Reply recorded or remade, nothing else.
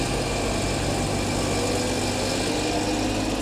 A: recorded